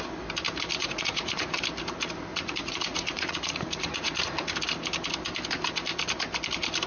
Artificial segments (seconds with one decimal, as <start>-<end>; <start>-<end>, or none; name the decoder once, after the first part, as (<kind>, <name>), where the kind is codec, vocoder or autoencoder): 0.8-1.6 (vocoder, Vocos); 2.3-4.5